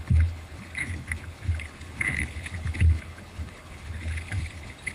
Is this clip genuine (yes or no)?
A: no